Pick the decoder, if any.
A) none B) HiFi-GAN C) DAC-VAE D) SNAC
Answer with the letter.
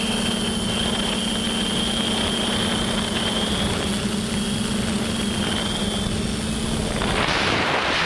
A